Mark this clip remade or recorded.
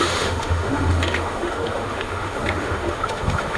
remade